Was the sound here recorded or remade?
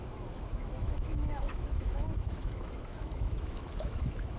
remade